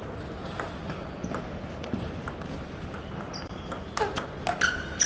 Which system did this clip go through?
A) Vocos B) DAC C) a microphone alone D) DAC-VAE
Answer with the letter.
C